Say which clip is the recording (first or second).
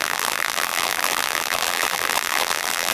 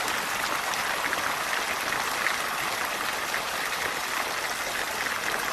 second